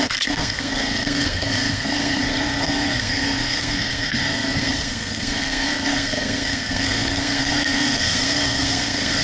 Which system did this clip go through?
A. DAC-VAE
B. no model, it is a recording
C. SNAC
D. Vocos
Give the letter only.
C